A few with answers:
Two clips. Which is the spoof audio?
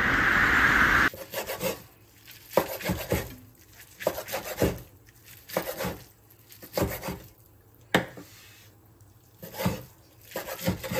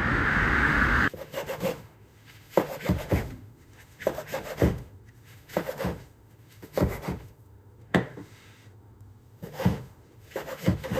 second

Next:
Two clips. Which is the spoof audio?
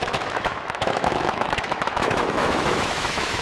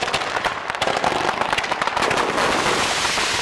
first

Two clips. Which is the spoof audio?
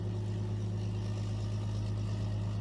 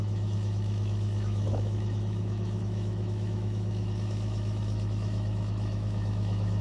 second